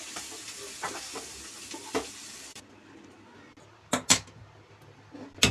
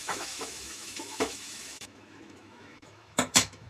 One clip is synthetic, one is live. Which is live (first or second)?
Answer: first